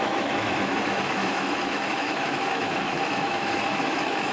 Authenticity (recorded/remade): remade